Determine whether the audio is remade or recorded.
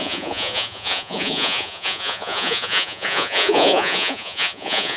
remade